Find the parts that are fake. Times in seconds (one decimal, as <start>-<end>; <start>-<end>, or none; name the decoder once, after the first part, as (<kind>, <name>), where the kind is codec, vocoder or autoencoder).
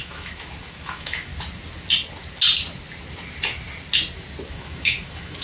0.0-1.3 (autoencoder, DAC-VAE); 4.5-5.4